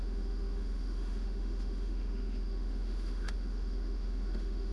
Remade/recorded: remade